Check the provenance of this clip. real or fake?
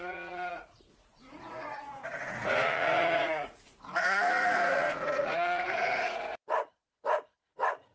fake